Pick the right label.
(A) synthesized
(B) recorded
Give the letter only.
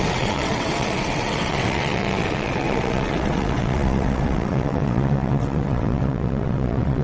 A